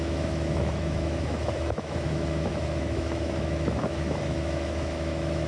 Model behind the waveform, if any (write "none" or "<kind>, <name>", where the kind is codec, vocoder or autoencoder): autoencoder, DAC-VAE